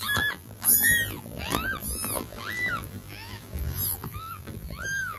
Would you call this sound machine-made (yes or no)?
yes